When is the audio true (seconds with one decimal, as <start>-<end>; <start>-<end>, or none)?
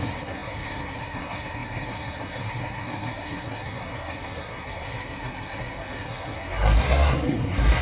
none